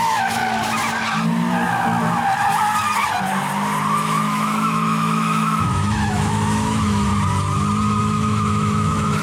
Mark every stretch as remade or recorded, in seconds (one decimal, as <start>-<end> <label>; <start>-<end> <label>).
0.0-0.4 remade; 0.4-4.0 recorded; 4.0-7.1 remade; 7.1-8.0 recorded; 8.0-9.2 remade